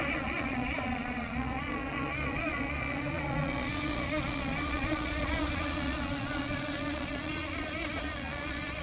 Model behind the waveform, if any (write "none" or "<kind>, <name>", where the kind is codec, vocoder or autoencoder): vocoder, Vocos